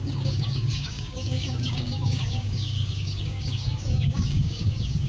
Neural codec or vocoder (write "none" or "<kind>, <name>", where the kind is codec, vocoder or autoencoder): codec, DAC